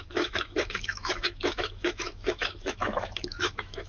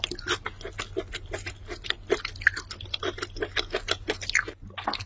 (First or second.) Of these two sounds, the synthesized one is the first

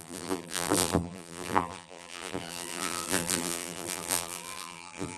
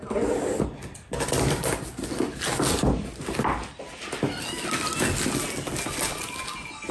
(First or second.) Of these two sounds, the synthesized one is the first